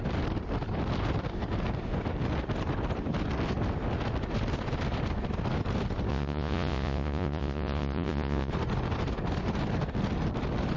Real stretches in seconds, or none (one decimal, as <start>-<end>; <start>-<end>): 0.0-6.1; 8.5-10.8